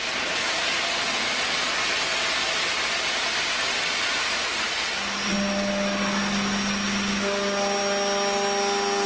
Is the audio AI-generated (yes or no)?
no